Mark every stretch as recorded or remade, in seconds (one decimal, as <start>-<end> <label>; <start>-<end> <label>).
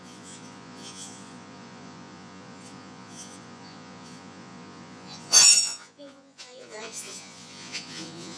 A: 0.0-8.4 remade